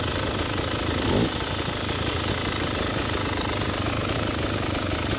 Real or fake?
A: real